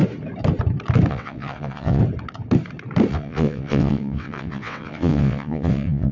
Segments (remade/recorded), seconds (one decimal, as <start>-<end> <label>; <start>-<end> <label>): 0.0-1.1 recorded; 1.1-2.0 remade; 2.0-3.1 recorded; 3.1-6.1 remade